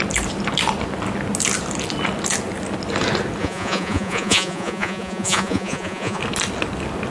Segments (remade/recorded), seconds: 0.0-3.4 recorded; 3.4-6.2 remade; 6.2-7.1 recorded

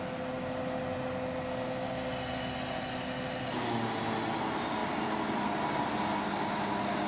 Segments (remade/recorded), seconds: 0.0-7.1 recorded

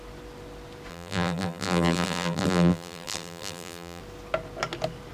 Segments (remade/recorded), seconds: 0.0-0.9 recorded; 0.9-4.0 remade; 4.0-5.1 recorded

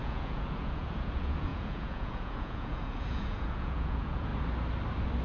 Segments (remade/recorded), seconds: 0.0-4.3 remade; 4.3-5.2 recorded

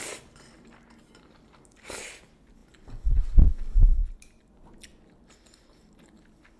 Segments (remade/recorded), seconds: 0.0-6.6 recorded

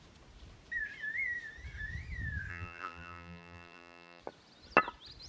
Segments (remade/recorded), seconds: 0.0-2.5 recorded; 2.5-4.2 remade; 4.2-5.3 recorded

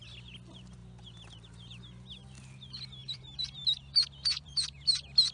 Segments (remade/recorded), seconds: 0.0-3.0 recorded; 3.0-5.3 remade

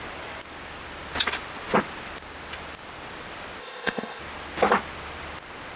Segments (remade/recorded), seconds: 0.0-3.6 recorded; 3.6-4.2 remade; 4.2-5.8 recorded